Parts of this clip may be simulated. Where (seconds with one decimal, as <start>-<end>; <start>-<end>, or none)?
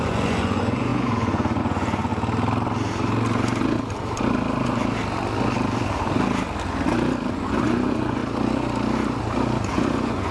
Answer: 0.0-2.1; 7.3-8.2; 9.7-10.3